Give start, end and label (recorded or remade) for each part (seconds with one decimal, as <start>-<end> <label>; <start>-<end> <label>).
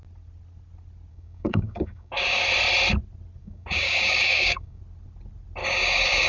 0.0-1.1 recorded; 1.1-2.4 remade; 2.4-3.4 recorded; 3.4-4.8 remade; 4.8-5.6 recorded; 5.6-6.3 remade